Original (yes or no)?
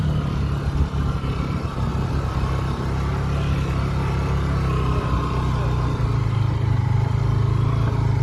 yes